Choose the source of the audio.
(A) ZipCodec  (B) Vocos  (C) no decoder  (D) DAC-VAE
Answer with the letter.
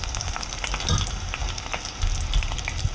C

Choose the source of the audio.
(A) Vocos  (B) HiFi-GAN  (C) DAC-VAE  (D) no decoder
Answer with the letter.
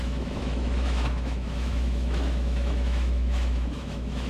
C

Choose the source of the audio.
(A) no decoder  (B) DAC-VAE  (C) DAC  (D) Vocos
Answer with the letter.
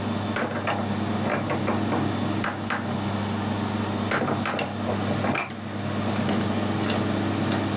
A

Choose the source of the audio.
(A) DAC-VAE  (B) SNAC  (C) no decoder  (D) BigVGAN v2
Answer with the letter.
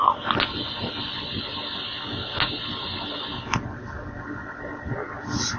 C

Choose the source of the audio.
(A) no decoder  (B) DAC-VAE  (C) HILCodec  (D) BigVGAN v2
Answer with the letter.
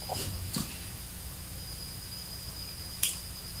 B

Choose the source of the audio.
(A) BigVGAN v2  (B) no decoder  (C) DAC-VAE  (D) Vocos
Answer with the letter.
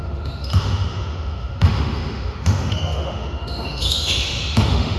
C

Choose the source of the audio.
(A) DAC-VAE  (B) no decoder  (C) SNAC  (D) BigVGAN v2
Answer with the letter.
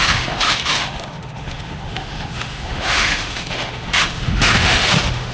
A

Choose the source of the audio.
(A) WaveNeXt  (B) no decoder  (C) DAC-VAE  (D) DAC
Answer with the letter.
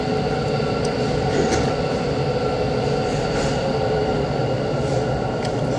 B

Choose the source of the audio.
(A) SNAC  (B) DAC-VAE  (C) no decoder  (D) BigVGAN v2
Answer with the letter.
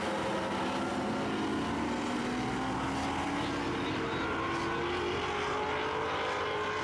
C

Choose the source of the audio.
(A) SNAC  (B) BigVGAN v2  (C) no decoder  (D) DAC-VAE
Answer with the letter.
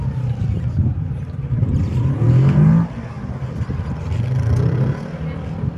C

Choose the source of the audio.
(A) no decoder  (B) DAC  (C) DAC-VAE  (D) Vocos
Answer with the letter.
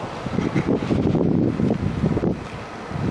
A